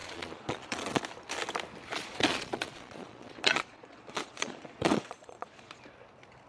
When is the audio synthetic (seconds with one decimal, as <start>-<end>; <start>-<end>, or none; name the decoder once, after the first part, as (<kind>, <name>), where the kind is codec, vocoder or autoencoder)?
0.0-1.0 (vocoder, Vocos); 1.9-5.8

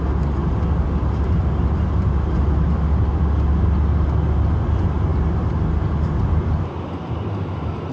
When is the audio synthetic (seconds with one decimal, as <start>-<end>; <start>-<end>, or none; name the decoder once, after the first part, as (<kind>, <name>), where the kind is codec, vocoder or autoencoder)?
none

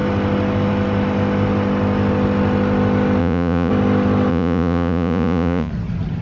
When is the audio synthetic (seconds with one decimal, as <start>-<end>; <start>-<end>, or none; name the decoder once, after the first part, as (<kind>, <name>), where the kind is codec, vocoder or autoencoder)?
3.2-3.7 (vocoder, Vocos); 4.3-5.7

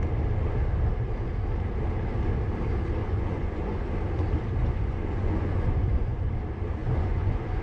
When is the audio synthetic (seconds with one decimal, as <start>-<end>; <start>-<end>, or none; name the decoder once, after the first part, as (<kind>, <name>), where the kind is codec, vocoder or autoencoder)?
3.0-3.8 (vocoder, Vocos); 4.6-6.3; 6.8-7.6

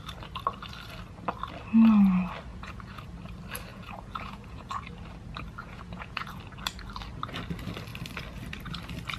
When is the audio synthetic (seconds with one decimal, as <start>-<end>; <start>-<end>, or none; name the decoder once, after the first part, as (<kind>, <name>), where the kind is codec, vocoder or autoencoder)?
2.5-3.0 (vocoder, Vocos); 3.7-4.8; 5.6-6.4

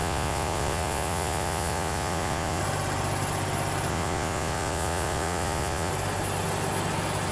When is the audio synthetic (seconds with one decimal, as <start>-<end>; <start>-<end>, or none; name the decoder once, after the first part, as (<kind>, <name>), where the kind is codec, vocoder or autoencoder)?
0.0-2.6 (vocoder, Vocos); 3.9-5.9